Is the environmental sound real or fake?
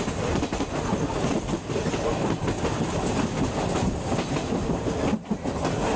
real